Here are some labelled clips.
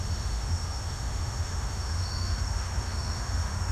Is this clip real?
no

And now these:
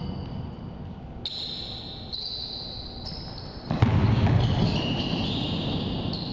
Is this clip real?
yes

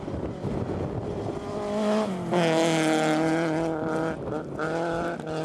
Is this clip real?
yes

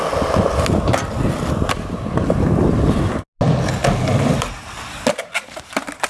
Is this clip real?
yes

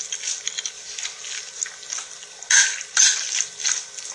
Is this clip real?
yes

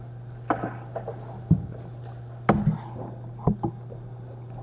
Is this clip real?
yes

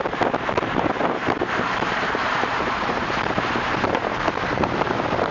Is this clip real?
no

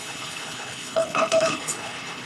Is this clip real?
no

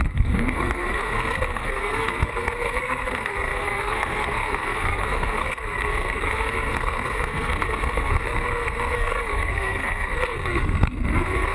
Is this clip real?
no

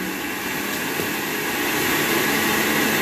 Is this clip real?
yes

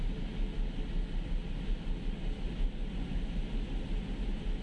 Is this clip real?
yes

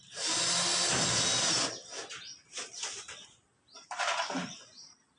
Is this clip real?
yes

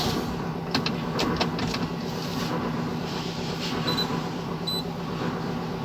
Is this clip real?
yes